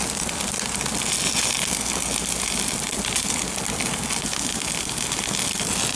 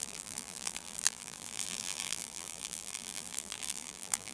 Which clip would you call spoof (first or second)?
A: second